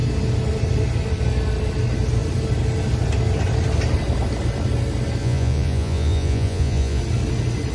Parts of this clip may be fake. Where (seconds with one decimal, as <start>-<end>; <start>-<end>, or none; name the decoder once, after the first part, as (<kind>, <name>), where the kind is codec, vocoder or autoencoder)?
5.2-7.0 (vocoder, Vocos)